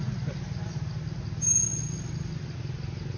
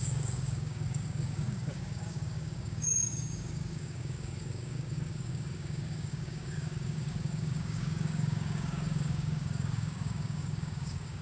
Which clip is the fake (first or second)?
second